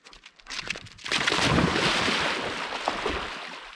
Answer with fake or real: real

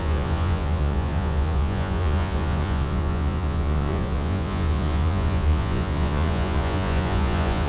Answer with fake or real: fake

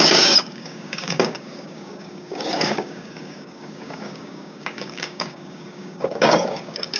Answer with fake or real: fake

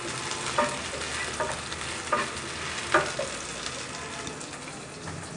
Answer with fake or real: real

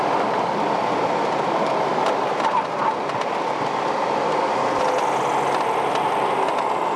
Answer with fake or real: real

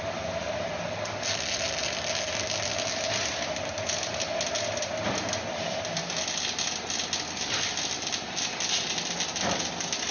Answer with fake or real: real